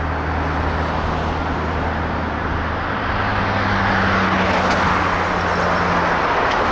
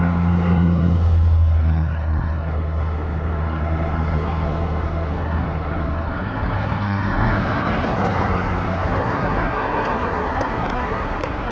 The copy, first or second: second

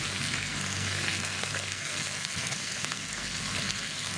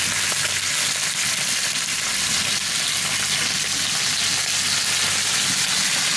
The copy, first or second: first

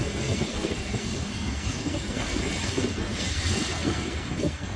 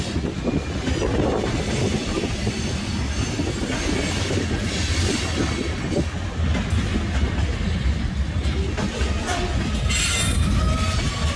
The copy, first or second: first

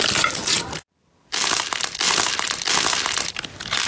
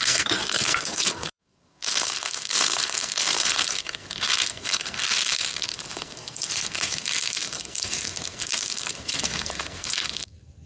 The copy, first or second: second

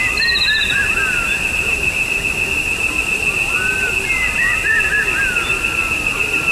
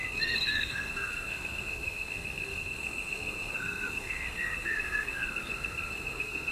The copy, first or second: second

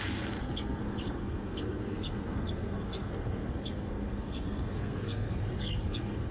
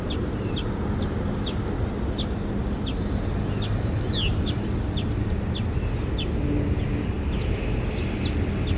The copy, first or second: first